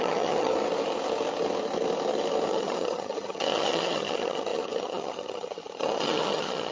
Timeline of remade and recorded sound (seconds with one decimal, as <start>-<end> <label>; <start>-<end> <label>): 0.0-0.5 remade; 0.5-2.5 recorded; 2.5-6.7 remade